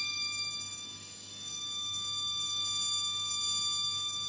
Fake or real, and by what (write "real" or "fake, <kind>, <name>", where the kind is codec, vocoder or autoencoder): fake, codec, DAC